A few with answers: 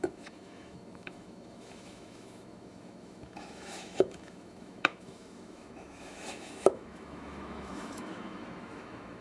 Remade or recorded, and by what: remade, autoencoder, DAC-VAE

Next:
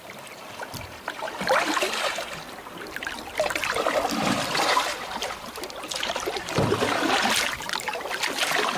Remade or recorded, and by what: recorded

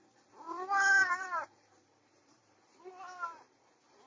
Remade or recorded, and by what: remade, vocoder, BigVGAN v2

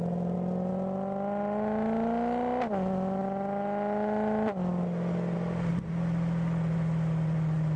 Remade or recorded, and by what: recorded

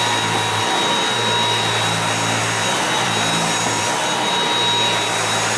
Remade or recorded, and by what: recorded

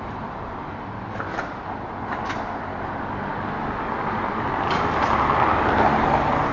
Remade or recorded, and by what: recorded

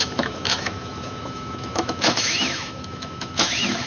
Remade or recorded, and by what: remade, autoencoder, DAC-VAE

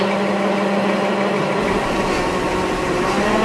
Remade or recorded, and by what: recorded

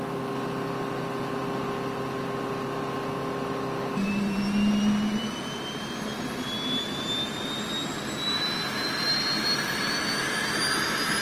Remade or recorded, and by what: recorded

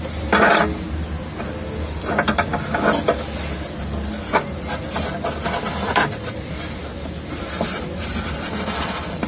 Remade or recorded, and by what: recorded